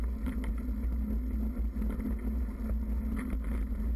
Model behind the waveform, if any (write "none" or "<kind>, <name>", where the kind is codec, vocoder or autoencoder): none